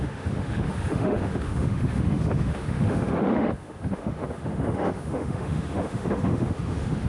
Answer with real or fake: fake